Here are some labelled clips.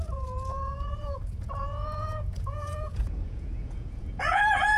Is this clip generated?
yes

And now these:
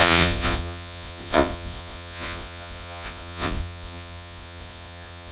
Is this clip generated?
yes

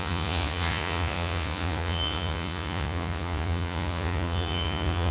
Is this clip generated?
yes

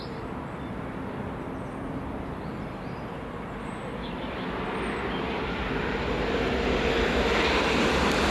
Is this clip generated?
no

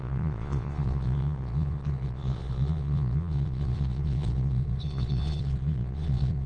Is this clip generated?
yes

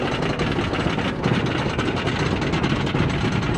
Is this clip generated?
no